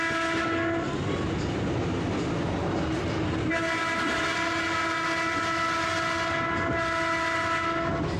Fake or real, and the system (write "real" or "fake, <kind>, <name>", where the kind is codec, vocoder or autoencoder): real